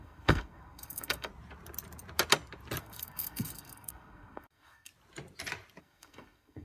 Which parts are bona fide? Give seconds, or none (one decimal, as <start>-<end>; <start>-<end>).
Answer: 1.3-2.8; 4.9-5.8